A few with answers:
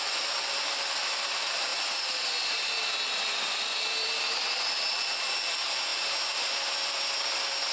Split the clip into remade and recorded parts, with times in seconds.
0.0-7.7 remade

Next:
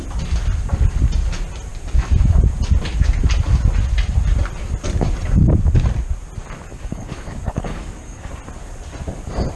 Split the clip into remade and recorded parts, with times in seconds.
0.0-6.7 recorded; 6.7-8.3 remade; 8.3-9.6 recorded